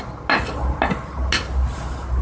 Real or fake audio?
real